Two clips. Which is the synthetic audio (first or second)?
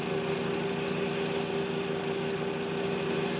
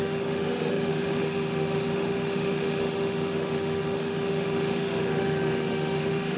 second